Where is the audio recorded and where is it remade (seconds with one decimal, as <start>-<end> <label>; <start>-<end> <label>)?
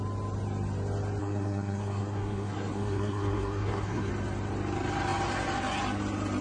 0.0-1.2 recorded; 1.2-4.1 remade; 4.1-6.4 recorded